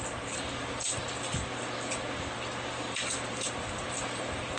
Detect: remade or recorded remade